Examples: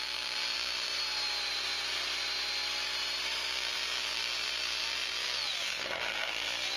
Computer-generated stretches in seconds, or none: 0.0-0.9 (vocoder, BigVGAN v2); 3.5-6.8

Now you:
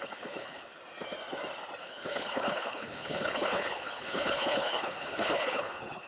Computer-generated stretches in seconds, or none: 0.0-0.8 (codec, HILCodec); 1.8-6.1

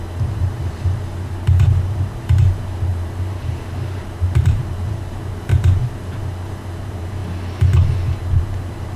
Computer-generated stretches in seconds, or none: 0.0-7.2 (vocoder, BigVGAN v2); 8.4-9.0

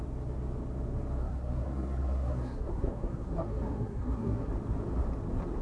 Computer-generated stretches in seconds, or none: 1.2-4.5 (codec, SNAC)

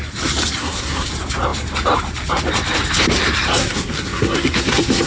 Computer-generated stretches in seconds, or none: 0.6-1.1 (codec, SNAC); 3.6-5.1

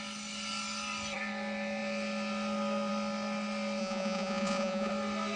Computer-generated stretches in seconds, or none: 3.8-4.9 (vocoder, Vocos)

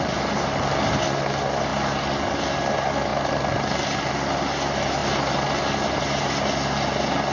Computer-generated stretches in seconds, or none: none

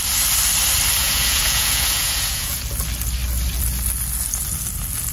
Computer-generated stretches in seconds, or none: 1.0-2.6 (vocoder, Vocos)